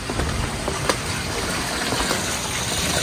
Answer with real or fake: real